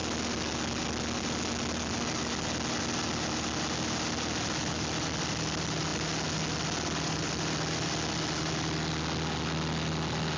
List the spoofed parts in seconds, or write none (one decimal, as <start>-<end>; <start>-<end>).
none